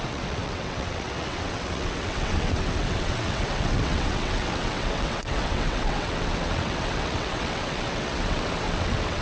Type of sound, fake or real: fake